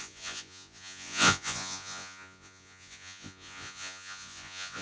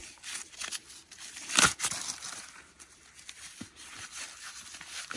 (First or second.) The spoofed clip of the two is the first